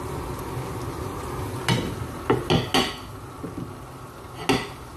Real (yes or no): yes